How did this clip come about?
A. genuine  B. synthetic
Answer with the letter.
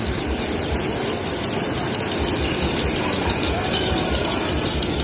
A